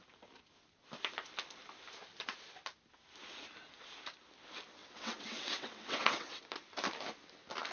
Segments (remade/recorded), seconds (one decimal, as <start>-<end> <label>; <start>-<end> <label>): 0.0-4.8 recorded; 4.8-6.4 remade; 6.4-7.7 recorded